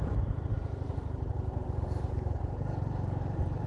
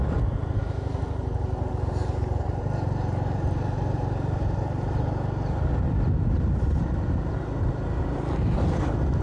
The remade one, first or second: first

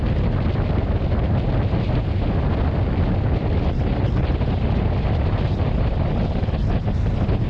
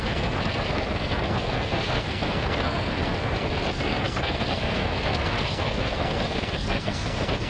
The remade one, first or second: second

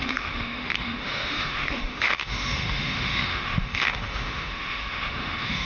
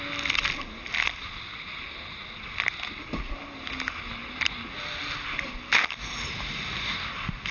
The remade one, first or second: first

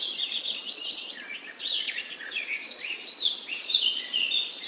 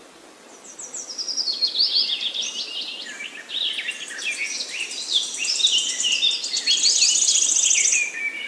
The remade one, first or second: first